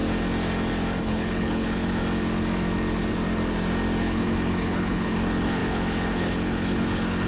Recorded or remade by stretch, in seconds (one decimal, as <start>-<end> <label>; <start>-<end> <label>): 0.0-1.0 recorded; 1.0-2.0 remade; 2.0-4.0 recorded; 4.0-7.3 remade